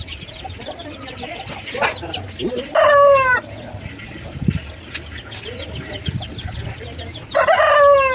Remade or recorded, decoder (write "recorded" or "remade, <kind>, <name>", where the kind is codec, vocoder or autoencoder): recorded